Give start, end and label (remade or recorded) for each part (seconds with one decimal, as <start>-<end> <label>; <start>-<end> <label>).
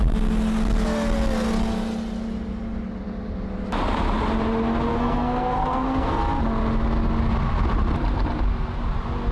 0.0-4.9 recorded; 4.9-6.2 remade; 6.2-9.3 recorded